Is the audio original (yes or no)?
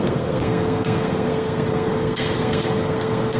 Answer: no